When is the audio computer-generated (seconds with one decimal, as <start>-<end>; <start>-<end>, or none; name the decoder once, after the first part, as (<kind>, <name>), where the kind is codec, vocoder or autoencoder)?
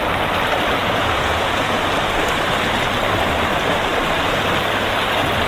0.8-1.8 (vocoder, Vocos)